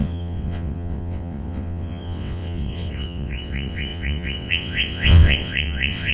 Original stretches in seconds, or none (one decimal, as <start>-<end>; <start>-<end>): none

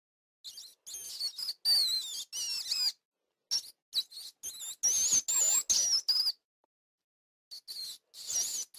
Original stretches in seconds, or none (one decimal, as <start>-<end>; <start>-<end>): 0.0-8.8

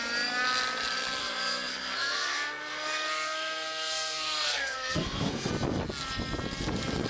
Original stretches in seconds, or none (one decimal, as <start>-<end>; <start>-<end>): 0.0-1.2; 5.5-7.1

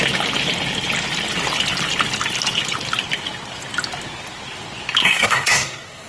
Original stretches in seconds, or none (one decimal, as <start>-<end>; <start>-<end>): 0.0-5.0

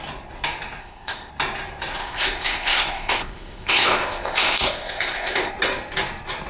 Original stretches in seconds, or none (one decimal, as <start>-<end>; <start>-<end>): 0.0-0.8; 1.3-2.0; 5.5-6.5

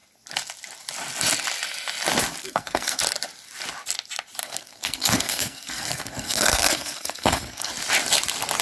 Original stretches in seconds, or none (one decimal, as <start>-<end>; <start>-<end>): 0.0-2.4; 3.0-4.4; 7.7-8.6

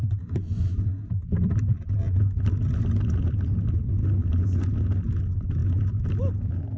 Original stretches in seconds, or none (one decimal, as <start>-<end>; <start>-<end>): 0.0-6.8